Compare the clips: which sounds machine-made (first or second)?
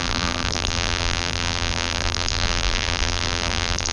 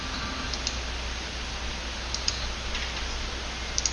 first